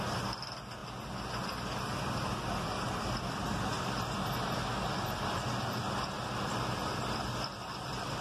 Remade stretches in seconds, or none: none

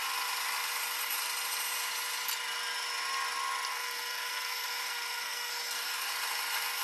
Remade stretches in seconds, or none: 3.7-6.1 (codec, SNAC)

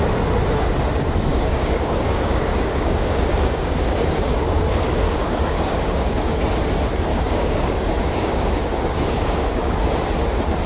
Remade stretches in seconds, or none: 1.3-6.4 (codec, DAC); 7.1-9.9

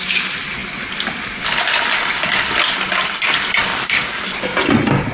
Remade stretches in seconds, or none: 3.7-4.4 (codec, DAC)

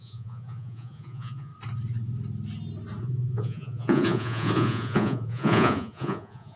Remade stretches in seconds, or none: 0.0-1.5 (vocoder, Vocos); 3.0-6.6

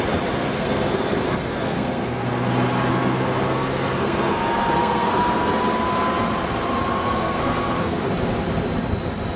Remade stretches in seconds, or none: 0.4-2.5 (codec, SNAC); 2.9-5.6; 7.0-8.1